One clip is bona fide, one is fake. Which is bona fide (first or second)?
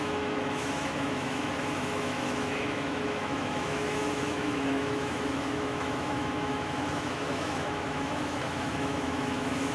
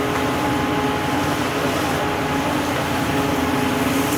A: second